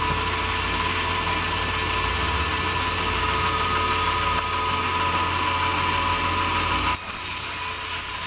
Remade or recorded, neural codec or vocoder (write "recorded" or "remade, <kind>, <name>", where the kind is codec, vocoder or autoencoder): recorded